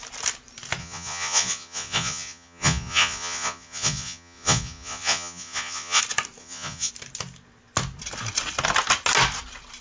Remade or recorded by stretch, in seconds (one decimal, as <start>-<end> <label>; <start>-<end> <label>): 0.0-0.8 recorded; 0.8-6.0 remade; 6.0-6.4 recorded; 6.4-6.9 remade; 6.9-9.8 recorded